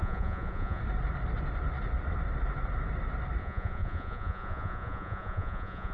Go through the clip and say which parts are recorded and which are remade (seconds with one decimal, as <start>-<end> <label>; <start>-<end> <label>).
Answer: 0.0-0.8 remade; 0.8-3.4 recorded; 3.4-5.9 remade